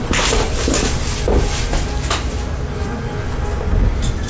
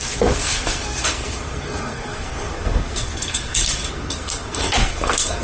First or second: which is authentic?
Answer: first